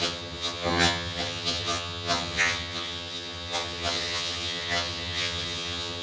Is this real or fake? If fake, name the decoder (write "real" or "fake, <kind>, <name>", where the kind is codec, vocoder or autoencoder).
fake, vocoder, HiFi-GAN